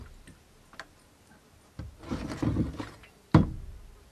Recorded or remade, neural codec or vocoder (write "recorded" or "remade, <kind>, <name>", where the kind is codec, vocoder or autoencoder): recorded